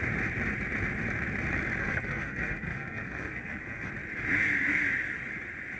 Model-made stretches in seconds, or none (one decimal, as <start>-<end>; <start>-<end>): 1.8-3.9